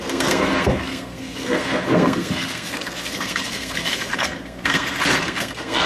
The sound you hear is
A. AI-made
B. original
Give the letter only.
A